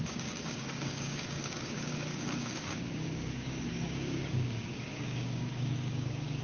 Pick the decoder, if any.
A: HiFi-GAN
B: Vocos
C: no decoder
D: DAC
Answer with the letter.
D